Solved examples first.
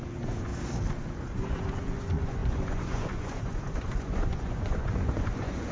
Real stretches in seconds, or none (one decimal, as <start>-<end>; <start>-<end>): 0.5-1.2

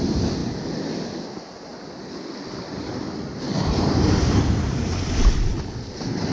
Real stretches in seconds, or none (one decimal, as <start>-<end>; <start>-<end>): 0.0-6.3

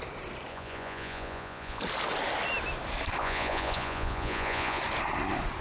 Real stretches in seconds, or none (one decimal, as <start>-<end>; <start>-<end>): 0.0-0.5; 1.8-3.2; 4.8-5.6

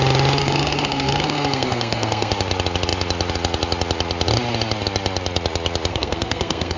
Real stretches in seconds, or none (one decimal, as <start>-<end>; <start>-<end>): 0.0-0.4; 2.3-5.9

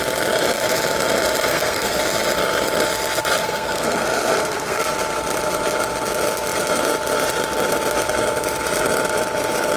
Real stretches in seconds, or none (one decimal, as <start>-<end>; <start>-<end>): 0.0-1.5; 2.0-3.4; 4.8-9.8

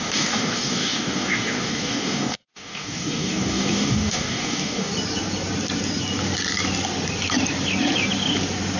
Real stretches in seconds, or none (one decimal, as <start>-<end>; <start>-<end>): 4.9-8.8

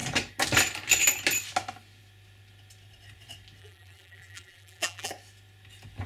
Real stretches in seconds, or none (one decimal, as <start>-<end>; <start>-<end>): 0.0-3.6; 5.1-6.1

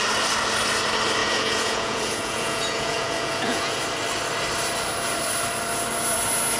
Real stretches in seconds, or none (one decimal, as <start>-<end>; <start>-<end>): 0.0-1.2; 3.8-6.6